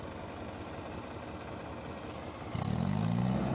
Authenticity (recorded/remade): recorded